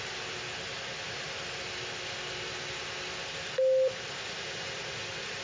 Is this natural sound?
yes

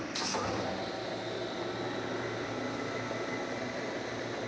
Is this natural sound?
yes